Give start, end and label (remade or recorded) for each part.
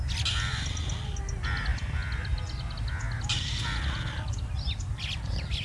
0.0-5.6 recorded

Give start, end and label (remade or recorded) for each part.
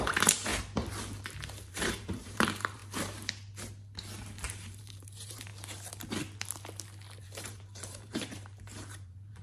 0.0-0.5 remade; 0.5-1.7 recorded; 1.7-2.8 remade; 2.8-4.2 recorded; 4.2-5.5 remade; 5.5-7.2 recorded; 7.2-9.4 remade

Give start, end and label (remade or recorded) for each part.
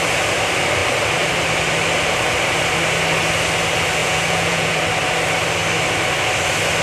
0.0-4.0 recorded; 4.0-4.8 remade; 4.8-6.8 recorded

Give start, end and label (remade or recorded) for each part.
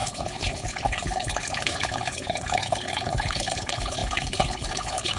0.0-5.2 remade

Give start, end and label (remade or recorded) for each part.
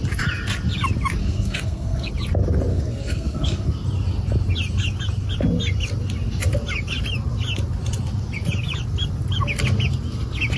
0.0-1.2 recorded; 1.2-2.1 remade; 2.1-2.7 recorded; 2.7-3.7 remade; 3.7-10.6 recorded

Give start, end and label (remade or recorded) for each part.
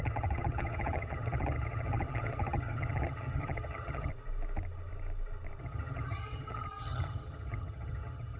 0.0-4.1 remade; 4.1-5.6 recorded; 5.6-8.4 remade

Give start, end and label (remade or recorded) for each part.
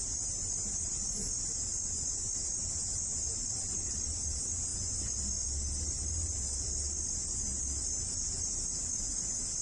0.0-9.6 recorded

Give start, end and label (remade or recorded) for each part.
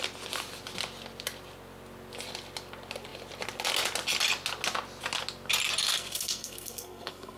0.0-5.9 recorded; 5.9-7.4 remade